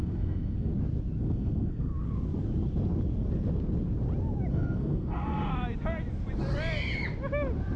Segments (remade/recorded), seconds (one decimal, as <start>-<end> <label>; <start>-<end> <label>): 0.0-0.7 remade; 0.7-1.2 recorded; 1.2-1.9 remade; 1.9-4.5 recorded; 4.5-5.5 remade; 5.5-7.8 recorded